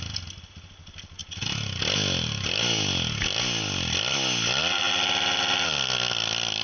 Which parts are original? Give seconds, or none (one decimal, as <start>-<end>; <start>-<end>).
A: 0.0-6.6